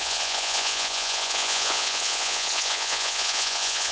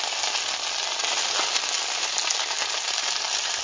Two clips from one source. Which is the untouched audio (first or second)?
second